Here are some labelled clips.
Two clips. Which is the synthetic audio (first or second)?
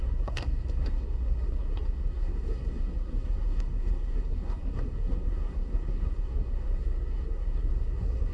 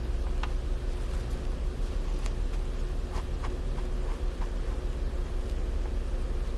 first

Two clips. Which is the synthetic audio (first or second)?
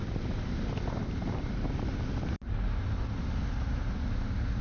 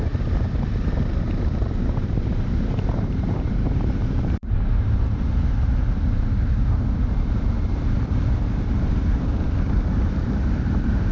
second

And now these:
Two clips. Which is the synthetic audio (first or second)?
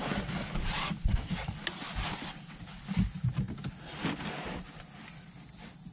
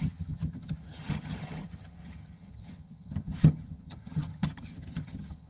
second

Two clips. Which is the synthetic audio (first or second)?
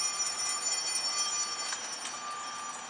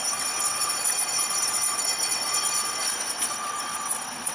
second